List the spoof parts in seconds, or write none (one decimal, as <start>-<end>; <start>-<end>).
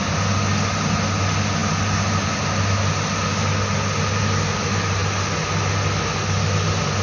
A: none